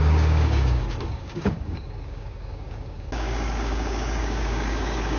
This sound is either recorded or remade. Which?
remade